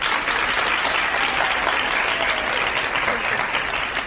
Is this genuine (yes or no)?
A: yes